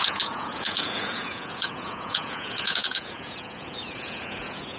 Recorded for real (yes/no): no